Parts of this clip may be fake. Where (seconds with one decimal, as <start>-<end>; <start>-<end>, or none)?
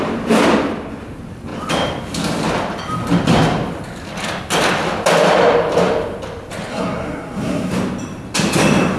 6.7-7.7